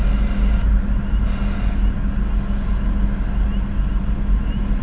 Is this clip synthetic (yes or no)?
no